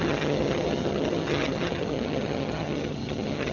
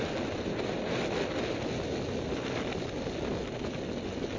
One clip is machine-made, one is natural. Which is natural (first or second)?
second